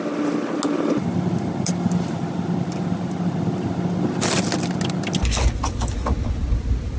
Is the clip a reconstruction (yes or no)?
no